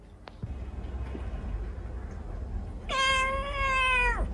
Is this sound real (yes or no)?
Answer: yes